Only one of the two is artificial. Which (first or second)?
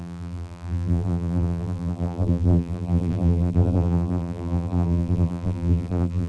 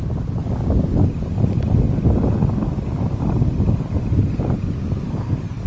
first